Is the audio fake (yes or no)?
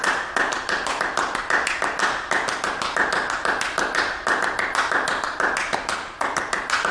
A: no